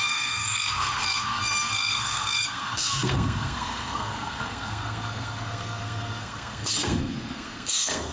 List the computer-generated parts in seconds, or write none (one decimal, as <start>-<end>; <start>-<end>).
0.0-8.1